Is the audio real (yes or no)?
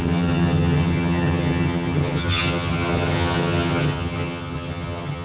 no